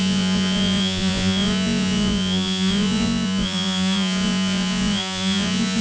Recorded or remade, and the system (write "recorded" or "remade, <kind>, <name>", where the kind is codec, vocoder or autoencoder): remade, vocoder, Vocos